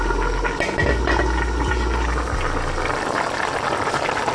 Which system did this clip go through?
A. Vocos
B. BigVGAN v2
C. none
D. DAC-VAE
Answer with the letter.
C